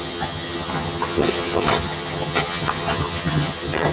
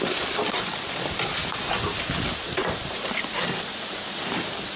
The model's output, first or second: first